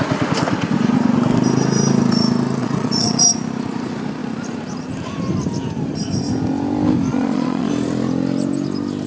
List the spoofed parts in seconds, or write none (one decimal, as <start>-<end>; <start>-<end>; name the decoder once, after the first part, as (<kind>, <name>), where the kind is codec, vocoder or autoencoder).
2.6-3.3 (vocoder, Vocos); 7.1-7.7